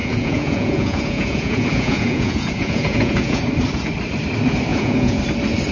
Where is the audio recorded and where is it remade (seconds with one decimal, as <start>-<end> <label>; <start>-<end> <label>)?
0.0-3.4 remade; 3.4-4.7 recorded; 4.7-5.2 remade; 5.2-5.7 recorded